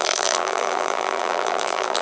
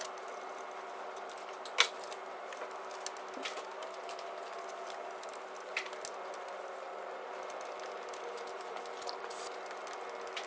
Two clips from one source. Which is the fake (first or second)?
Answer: first